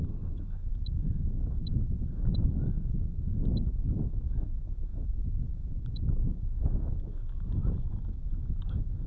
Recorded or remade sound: remade